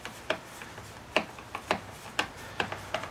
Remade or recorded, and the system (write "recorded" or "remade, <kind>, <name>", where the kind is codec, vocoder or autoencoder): recorded